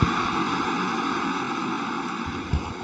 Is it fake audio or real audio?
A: real